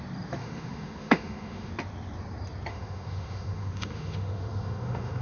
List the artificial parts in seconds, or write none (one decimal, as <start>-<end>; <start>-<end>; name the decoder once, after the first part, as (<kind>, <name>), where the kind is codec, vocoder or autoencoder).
0.4-1.7 (autoencoder, DAC-VAE); 2.7-5.2